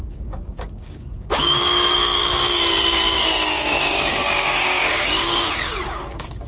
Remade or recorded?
remade